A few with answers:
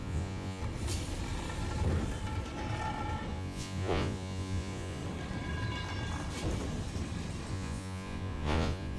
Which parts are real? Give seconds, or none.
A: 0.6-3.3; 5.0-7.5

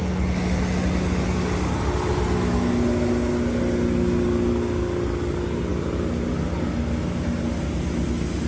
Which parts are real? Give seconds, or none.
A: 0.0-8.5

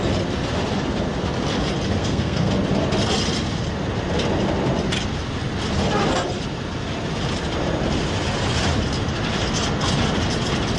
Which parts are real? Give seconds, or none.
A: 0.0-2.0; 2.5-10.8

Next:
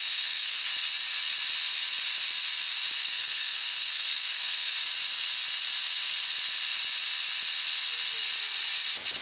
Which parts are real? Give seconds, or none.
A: 0.7-3.0; 4.7-9.2